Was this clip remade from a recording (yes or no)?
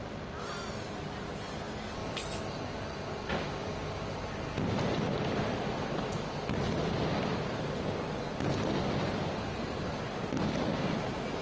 no